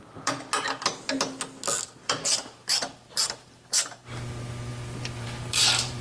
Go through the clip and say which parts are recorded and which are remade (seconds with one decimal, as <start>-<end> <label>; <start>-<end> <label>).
0.0-2.0 recorded; 2.0-4.0 remade; 4.0-4.7 recorded; 4.7-6.0 remade